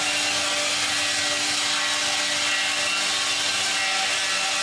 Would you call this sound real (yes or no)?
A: yes